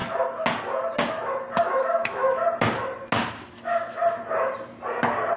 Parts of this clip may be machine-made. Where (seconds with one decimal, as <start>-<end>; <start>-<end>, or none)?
1.6-2.2; 3.6-4.0